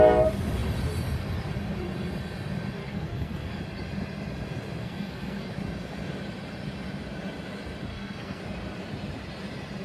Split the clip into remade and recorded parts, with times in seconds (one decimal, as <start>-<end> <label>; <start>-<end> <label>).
0.0-2.8 recorded; 2.8-3.6 remade; 3.6-4.8 recorded; 4.8-5.5 remade; 5.5-7.9 recorded; 7.9-8.4 remade; 8.4-9.8 recorded